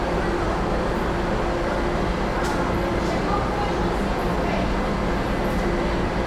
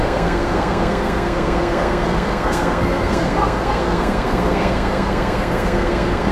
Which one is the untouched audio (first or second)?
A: first